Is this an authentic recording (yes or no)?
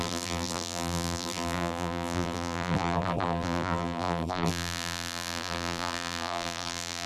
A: no